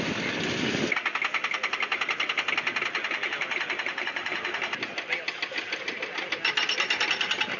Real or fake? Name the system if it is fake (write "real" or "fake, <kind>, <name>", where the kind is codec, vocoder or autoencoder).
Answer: real